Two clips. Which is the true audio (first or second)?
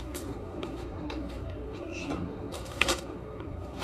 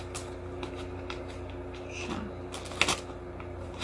second